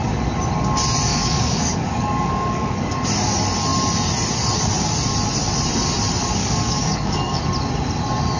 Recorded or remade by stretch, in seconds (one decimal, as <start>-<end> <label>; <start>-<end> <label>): 0.0-1.1 recorded; 1.1-3.1 remade; 3.1-6.4 recorded; 6.4-7.4 remade; 7.4-8.4 recorded